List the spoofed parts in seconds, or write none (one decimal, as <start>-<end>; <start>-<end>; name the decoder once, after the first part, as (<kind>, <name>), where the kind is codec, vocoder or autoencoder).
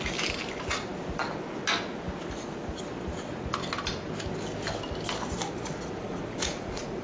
6.0-7.0 (vocoder, Vocos)